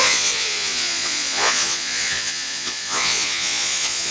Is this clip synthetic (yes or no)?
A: yes